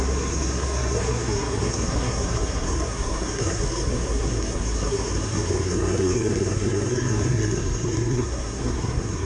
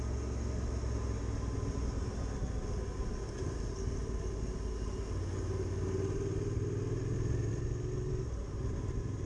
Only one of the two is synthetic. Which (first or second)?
first